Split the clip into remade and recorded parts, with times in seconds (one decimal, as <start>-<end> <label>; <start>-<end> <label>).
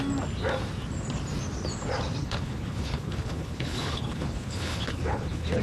0.0-2.2 recorded; 2.2-5.6 remade